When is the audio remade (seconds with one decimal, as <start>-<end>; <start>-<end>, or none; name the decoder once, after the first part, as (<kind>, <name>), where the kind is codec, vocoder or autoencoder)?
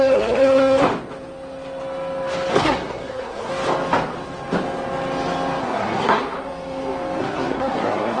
0.0-0.9 (codec, SNAC); 2.5-3.5; 5.6-6.2; 7.2-8.2